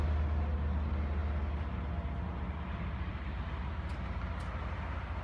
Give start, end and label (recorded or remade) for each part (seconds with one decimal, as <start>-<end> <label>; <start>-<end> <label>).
0.0-5.2 recorded